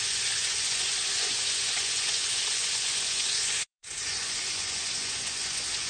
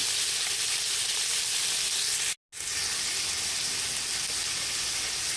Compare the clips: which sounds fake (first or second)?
first